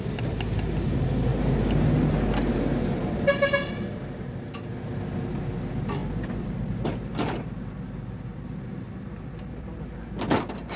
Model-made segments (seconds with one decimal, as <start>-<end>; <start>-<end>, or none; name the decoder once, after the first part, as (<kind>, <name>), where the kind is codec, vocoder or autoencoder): none